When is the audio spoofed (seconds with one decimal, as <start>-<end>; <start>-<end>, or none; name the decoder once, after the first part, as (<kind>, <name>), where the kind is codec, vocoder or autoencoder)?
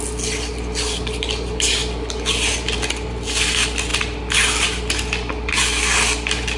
none